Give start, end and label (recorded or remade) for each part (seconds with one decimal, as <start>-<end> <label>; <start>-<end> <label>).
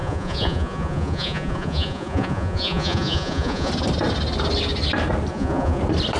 0.0-3.7 remade; 3.7-5.3 recorded; 5.3-5.8 remade; 5.8-6.2 recorded